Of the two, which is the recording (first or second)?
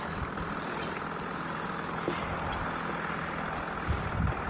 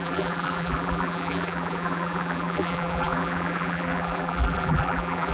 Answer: first